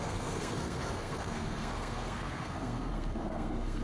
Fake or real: fake